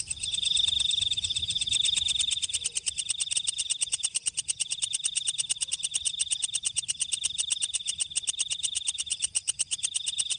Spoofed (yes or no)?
no